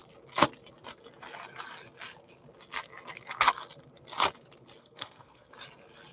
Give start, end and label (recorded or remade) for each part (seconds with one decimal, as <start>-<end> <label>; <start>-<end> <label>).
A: 0.0-4.8 recorded; 4.8-5.5 remade; 5.5-6.1 recorded